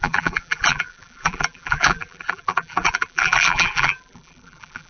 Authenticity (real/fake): fake